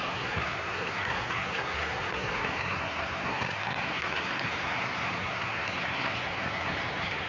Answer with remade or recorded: remade